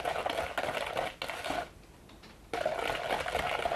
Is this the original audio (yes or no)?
yes